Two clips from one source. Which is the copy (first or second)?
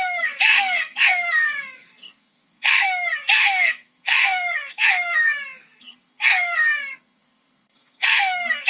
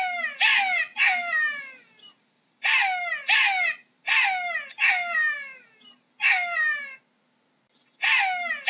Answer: first